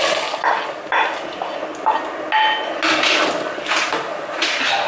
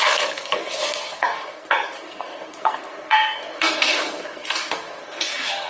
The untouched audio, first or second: first